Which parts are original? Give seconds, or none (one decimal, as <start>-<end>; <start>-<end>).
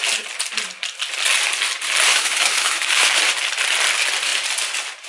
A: 0.0-2.1; 3.2-5.1